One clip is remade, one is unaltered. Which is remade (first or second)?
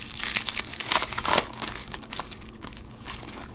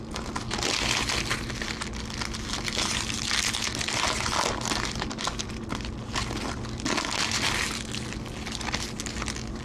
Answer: first